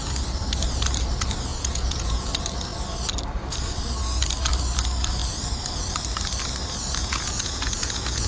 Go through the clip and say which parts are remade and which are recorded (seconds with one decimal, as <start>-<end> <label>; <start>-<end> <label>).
0.0-1.5 recorded; 1.5-2.3 remade; 2.3-7.0 recorded; 7.0-8.3 remade